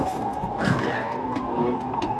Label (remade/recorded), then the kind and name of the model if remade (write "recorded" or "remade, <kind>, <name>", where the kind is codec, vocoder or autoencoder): remade, codec, DAC